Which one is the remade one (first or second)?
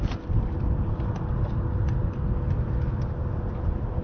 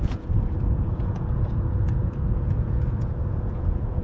second